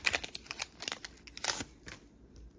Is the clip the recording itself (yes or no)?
yes